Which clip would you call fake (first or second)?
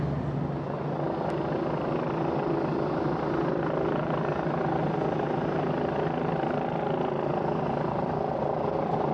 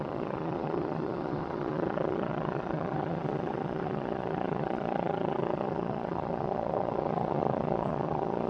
second